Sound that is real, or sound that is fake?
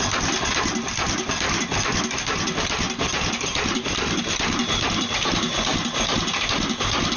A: real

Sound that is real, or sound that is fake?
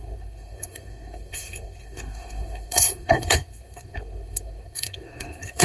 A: fake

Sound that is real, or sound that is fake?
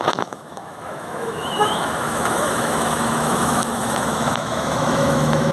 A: fake